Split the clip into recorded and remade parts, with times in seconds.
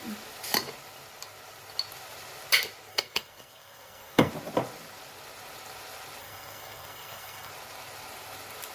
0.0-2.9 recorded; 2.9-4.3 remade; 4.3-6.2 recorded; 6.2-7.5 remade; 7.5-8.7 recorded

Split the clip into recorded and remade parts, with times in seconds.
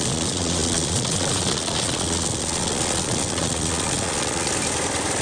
0.0-4.5 remade; 4.5-5.2 recorded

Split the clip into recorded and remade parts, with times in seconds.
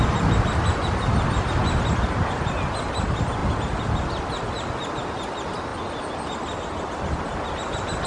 0.0-1.6 recorded; 1.6-2.4 remade; 2.4-8.1 recorded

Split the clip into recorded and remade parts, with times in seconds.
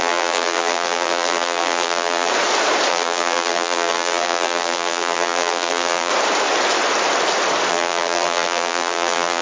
0.0-2.3 remade; 2.3-2.9 recorded; 2.9-6.1 remade; 6.1-7.7 recorded; 7.7-9.4 remade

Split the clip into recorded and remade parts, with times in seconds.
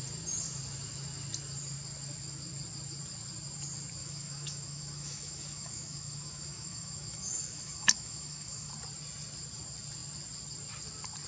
0.0-4.0 recorded; 4.0-8.7 remade; 8.7-11.3 recorded